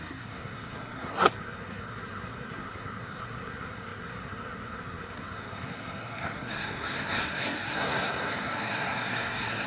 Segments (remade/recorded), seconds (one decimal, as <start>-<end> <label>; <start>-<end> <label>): 0.0-9.7 remade